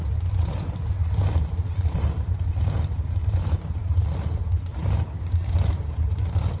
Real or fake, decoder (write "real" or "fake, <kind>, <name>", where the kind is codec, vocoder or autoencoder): fake, vocoder, BigVGAN v2